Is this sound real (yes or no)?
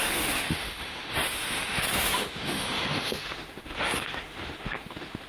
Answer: no